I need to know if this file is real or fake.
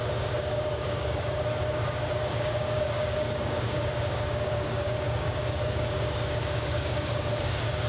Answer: fake